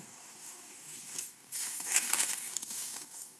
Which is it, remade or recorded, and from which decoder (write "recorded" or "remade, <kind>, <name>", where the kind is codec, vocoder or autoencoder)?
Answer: remade, codec, DAC